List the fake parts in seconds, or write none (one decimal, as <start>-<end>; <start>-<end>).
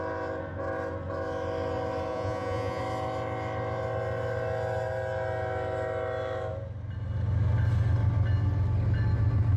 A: 2.1-2.8